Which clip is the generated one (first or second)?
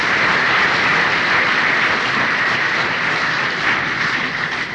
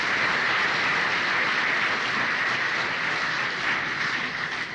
first